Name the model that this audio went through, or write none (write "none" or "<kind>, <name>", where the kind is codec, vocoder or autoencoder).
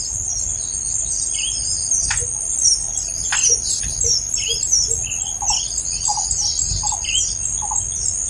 none